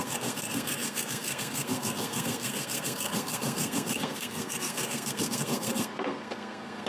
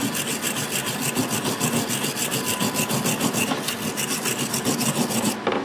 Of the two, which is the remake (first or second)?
first